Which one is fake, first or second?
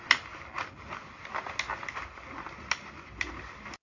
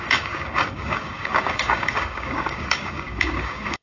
second